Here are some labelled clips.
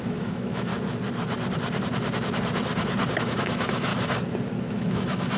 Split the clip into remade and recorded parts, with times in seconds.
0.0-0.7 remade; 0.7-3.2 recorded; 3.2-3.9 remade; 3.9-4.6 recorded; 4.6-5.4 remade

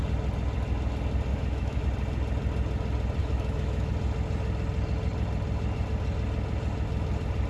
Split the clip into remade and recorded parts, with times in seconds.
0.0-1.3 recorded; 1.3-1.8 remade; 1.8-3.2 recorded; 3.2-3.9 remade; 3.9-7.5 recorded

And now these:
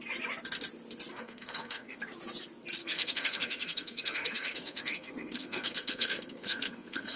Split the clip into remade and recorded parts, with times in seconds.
0.0-1.1 recorded; 1.1-2.0 remade; 2.0-2.8 recorded; 2.8-7.2 remade